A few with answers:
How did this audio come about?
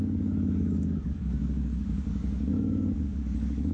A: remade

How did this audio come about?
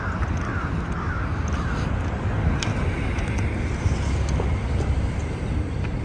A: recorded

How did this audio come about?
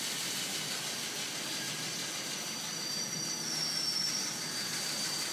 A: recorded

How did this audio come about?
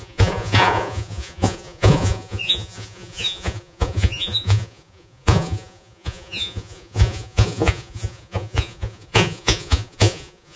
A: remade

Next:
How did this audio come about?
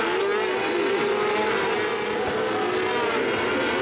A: recorded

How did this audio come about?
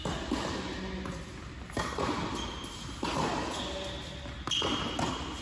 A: recorded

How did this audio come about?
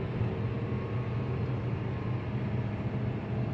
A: recorded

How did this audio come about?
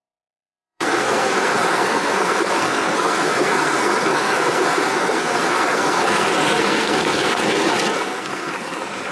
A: remade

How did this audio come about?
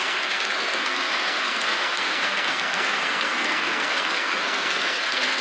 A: remade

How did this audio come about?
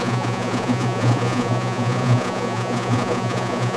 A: remade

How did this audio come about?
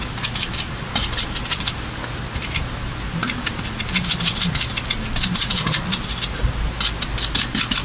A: recorded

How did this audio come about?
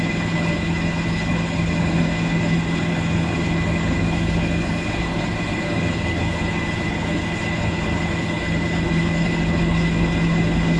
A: remade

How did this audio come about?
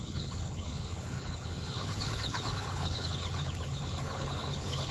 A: remade